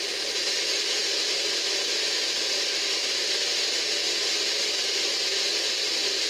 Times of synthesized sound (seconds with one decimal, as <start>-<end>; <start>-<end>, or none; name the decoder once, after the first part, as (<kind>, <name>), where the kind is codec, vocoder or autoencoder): none